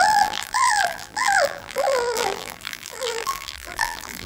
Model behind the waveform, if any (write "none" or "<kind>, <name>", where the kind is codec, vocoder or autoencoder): vocoder, BigVGAN v2